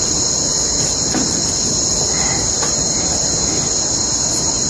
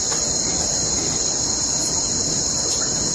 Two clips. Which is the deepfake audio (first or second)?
second